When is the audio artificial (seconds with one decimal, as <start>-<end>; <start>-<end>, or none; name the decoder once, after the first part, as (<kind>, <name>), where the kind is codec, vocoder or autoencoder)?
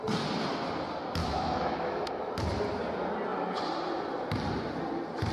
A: 1.2-2.3 (autoencoder, DAC-VAE)